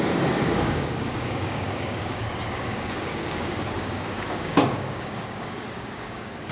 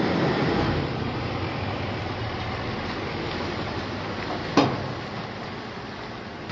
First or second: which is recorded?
second